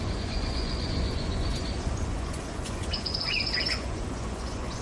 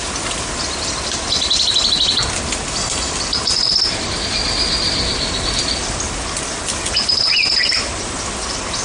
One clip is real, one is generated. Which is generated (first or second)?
first